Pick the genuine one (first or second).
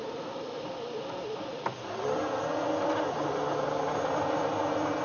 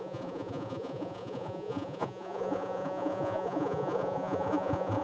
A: first